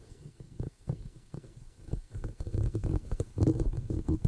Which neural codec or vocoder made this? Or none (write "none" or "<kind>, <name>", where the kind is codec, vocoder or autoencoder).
codec, SNAC